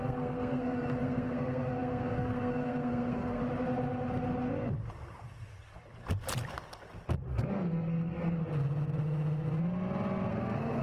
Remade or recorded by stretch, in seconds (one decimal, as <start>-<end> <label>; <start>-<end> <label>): 0.0-3.4 remade; 3.4-7.3 recorded; 7.3-8.4 remade; 8.4-10.3 recorded; 10.3-10.8 remade